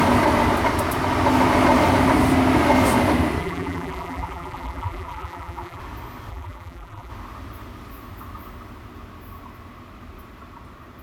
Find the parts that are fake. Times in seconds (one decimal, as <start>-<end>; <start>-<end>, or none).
3.4-5.8; 6.3-7.1